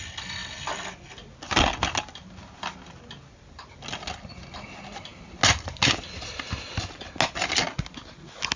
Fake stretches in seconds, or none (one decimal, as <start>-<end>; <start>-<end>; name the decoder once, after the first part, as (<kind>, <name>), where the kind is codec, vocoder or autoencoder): none